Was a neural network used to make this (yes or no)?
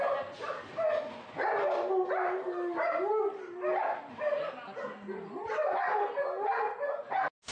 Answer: no